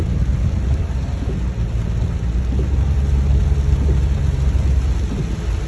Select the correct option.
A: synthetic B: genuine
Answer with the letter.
B